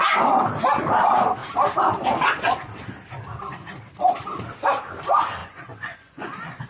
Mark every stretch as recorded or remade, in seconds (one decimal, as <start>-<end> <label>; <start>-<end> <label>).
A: 0.0-5.4 recorded; 5.4-6.7 remade